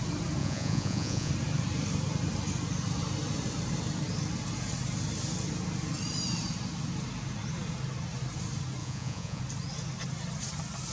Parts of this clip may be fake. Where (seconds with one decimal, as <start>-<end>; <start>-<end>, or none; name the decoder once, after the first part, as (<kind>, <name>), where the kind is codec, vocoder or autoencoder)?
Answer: 0.4-1.3 (vocoder, Vocos); 8.8-9.4